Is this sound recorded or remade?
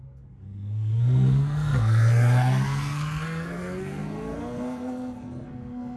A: remade